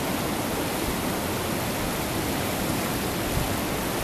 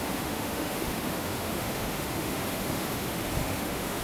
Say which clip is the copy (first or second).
second